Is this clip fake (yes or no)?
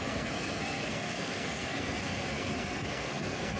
yes